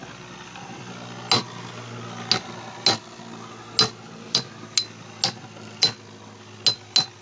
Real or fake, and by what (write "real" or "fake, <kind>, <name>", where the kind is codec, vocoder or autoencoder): real